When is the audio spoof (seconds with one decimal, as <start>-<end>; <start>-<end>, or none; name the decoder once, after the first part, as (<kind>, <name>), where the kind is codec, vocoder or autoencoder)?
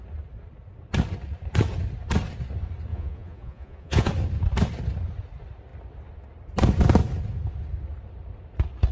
2.9-4.1 (vocoder, Vocos)